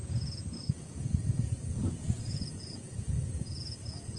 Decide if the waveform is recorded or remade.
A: remade